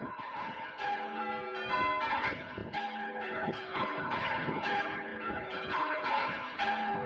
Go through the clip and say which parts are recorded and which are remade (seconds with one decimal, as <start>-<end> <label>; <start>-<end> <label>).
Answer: 0.0-1.2 remade; 1.2-2.1 recorded; 2.1-7.1 remade